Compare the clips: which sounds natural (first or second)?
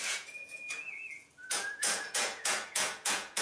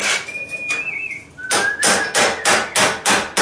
second